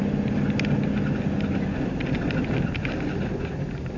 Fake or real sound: real